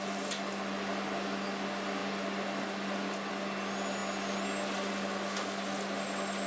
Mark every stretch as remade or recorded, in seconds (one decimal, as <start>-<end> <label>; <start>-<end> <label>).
0.0-6.5 recorded